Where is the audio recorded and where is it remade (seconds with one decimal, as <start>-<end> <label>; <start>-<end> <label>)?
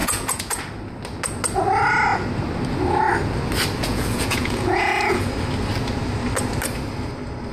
0.0-0.6 remade; 0.6-3.8 recorded; 3.8-5.3 remade; 5.3-7.5 recorded